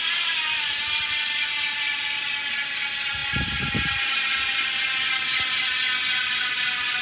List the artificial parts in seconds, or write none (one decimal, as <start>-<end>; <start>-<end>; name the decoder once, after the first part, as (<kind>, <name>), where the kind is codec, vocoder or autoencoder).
none